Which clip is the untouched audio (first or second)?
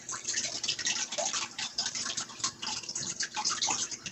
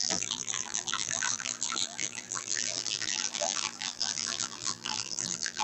first